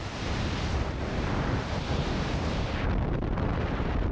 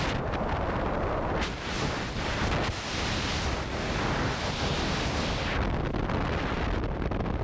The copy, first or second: first